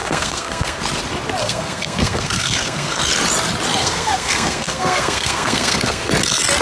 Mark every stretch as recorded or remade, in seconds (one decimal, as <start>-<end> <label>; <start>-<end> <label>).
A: 0.0-0.8 remade; 0.8-1.4 recorded; 1.4-3.0 remade; 3.0-3.8 recorded; 3.8-6.1 remade; 6.1-6.6 recorded